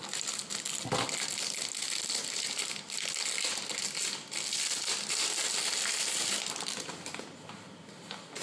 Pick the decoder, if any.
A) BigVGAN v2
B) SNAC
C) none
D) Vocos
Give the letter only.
C